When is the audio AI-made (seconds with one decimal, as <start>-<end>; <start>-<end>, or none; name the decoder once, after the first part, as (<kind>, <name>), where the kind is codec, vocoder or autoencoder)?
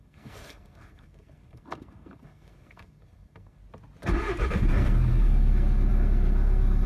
0.0-3.6 (codec, SNAC); 4.5-6.9